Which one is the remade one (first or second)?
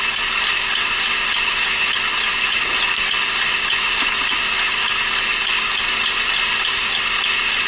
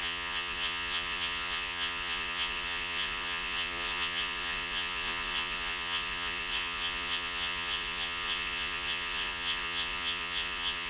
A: second